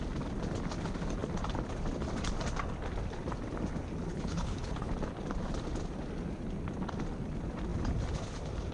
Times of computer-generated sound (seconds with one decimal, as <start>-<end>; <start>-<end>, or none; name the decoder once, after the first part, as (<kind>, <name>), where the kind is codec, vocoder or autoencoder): 4.1-4.9 (codec, HILCodec)